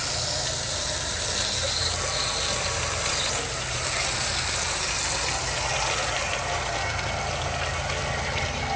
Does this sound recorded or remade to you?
recorded